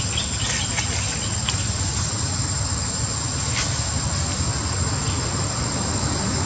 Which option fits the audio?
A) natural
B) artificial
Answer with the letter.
A